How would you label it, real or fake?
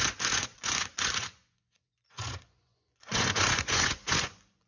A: fake